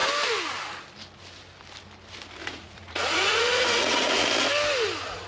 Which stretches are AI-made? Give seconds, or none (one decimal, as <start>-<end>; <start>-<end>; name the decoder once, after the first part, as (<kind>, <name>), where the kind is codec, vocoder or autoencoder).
2.4-4.1 (vocoder, Vocos)